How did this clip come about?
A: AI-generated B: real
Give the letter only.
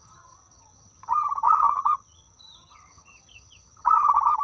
A